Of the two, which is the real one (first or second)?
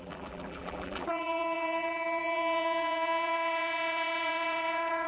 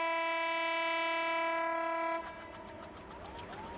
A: second